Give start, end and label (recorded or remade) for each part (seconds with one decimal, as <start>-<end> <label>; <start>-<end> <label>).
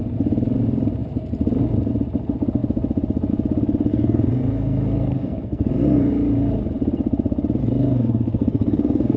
0.0-3.9 recorded; 3.9-6.1 remade; 6.1-7.6 recorded; 7.6-9.2 remade